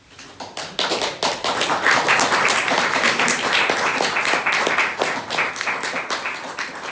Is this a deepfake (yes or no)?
no